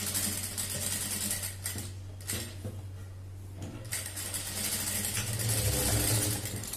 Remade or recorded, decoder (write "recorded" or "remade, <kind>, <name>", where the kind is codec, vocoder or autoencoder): recorded